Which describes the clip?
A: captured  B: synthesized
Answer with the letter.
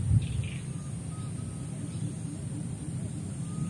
A